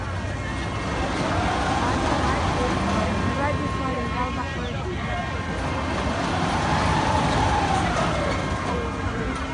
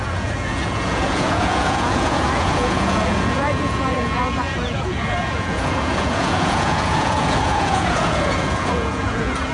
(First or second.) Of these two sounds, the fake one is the second